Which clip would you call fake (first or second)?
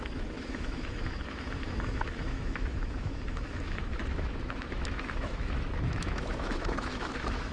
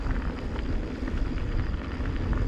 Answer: first